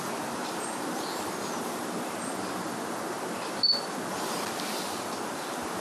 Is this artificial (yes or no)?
no